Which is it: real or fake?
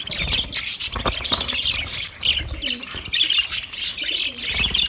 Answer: real